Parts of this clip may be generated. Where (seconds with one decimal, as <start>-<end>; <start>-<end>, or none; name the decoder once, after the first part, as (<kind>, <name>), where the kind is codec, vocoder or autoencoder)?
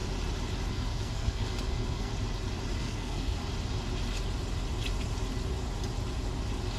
0.7-2.1 (codec, SNAC); 2.8-3.4